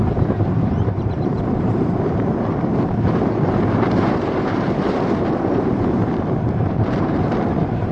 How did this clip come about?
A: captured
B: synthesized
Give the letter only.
B